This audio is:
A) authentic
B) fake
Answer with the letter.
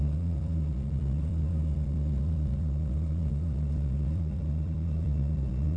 B